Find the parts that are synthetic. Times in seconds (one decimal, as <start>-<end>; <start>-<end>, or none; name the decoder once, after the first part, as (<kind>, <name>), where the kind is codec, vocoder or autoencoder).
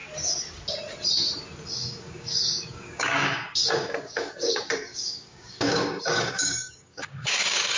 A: 1.7-7.8 (codec, DAC)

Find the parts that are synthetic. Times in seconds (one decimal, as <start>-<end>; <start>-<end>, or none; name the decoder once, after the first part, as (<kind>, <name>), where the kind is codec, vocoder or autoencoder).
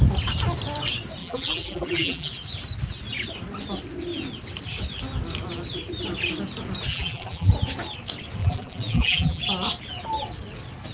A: 1.2-2.3 (vocoder, BigVGAN v2); 6.9-7.5; 8.4-9.4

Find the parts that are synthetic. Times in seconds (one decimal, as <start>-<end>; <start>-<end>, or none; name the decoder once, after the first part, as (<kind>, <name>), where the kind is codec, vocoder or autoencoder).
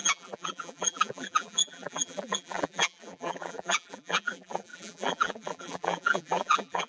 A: 0.0-6.9 (vocoder, BigVGAN v2)